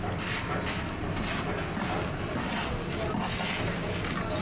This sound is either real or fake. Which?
real